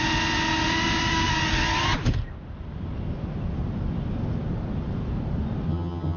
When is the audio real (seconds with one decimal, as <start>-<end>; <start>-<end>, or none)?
0.0-5.7